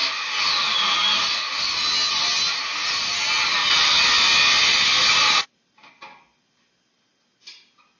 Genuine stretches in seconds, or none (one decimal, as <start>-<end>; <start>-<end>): 0.0-8.0